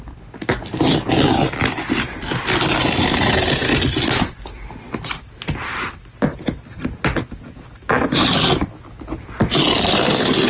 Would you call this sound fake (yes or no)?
no